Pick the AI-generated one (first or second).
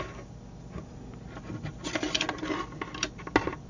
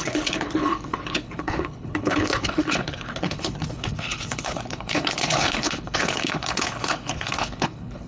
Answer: second